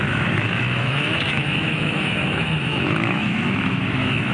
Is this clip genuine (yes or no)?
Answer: no